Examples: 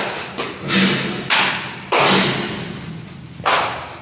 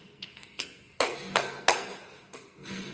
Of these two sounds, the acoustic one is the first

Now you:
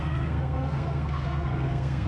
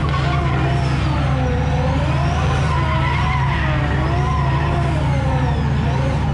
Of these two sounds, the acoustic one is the second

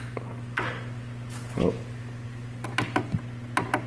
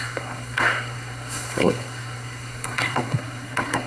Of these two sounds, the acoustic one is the first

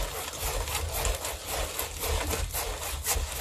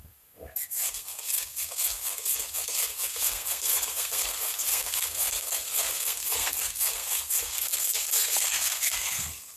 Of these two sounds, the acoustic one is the first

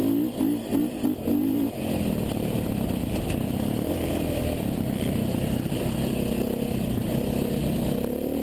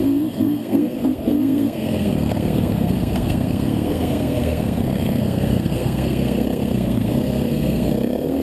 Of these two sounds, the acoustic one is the first